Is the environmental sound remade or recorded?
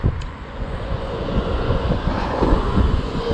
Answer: remade